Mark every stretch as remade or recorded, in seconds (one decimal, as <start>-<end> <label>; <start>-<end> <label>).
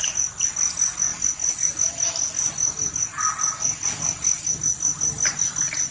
0.0-5.9 recorded